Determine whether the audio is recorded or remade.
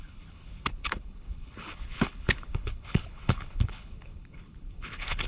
remade